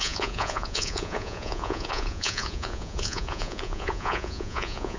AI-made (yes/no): yes